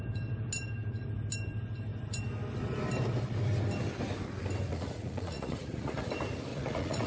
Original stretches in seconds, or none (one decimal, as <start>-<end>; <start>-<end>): 0.0-4.7; 6.1-6.5